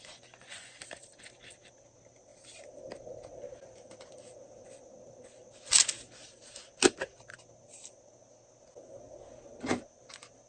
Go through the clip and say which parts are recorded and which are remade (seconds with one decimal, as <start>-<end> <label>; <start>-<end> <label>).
0.0-0.8 remade; 0.8-10.5 recorded

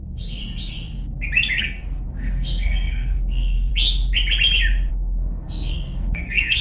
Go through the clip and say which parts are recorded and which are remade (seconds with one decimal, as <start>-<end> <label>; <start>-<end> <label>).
0.0-0.4 remade; 0.4-1.6 recorded; 1.6-3.7 remade; 3.7-4.9 recorded; 4.9-6.6 remade

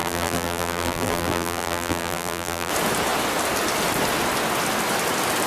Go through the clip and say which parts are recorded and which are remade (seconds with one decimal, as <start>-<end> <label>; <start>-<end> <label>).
0.0-2.7 remade; 2.7-5.5 recorded

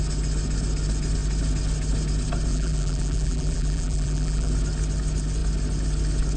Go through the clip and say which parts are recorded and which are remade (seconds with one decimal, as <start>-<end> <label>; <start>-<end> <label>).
0.0-2.5 recorded; 2.5-4.5 remade; 4.5-6.4 recorded

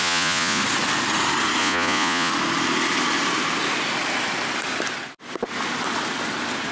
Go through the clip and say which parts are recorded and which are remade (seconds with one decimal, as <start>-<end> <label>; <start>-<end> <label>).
0.0-0.6 remade; 0.6-1.6 recorded; 1.6-2.3 remade; 2.3-6.7 recorded